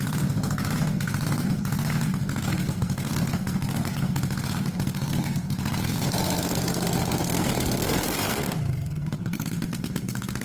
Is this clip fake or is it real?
fake